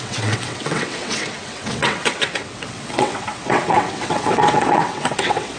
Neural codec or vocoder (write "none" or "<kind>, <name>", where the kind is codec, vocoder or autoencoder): vocoder, WaveNeXt